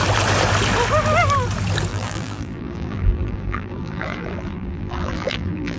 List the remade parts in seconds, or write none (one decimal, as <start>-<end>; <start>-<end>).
1.9-5.8